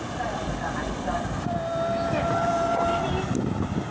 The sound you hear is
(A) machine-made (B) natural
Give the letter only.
B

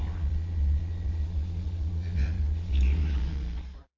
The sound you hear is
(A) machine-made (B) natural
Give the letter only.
A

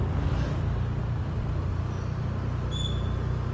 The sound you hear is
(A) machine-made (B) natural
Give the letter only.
B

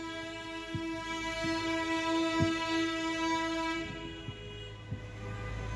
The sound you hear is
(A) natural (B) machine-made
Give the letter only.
A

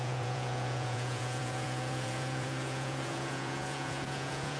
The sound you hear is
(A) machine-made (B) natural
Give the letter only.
A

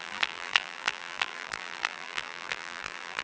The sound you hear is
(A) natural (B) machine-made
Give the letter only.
B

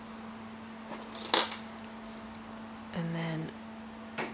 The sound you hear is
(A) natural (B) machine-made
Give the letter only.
A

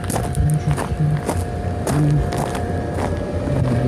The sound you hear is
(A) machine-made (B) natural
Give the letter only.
B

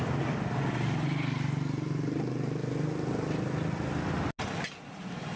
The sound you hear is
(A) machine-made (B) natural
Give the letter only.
B